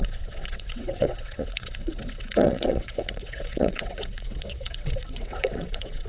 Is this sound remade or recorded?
remade